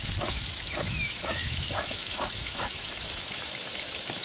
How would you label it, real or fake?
fake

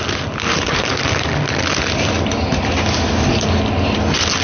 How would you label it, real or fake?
real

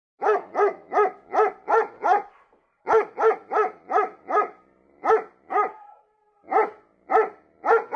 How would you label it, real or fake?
real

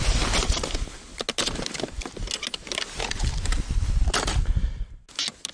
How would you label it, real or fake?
real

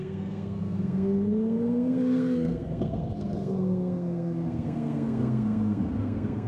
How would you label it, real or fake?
fake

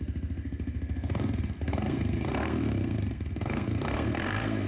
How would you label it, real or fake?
fake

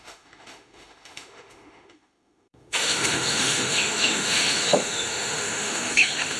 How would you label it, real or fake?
fake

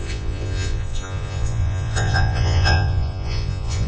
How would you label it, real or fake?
fake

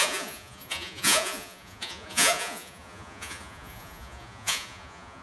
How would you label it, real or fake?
fake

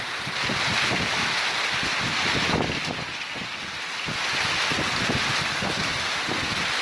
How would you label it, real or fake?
real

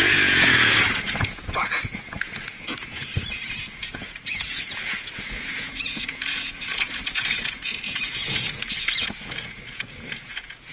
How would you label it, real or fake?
fake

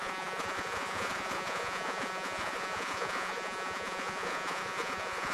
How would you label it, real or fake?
fake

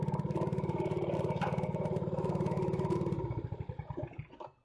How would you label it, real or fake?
real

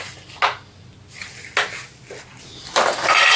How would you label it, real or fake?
real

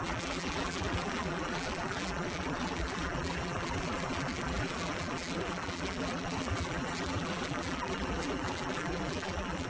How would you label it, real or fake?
fake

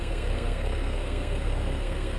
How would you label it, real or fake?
fake